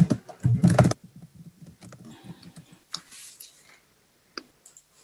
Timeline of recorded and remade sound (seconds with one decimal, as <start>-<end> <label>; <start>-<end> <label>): 0.0-5.0 recorded